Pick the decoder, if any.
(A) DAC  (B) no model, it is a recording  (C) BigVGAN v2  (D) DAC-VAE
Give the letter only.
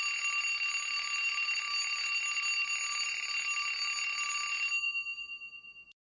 C